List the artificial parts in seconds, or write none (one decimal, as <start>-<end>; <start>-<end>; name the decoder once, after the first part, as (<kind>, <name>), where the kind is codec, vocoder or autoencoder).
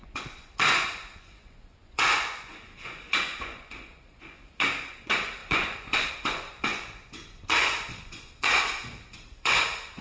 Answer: 0.0-10.0 (vocoder, Vocos)